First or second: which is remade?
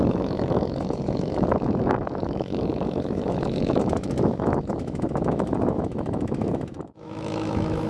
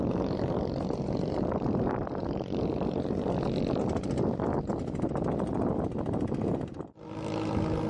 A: first